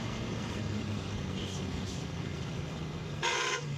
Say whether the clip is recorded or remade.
remade